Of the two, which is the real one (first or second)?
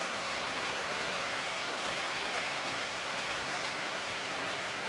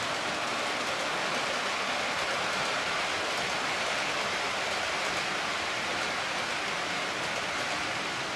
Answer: second